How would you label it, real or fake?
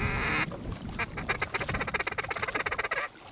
real